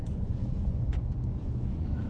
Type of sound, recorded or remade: remade